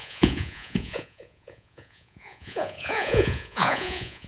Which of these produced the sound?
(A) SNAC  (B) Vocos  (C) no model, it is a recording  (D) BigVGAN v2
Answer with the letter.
B